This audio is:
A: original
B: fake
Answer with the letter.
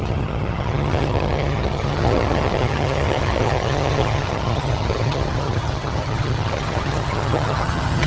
B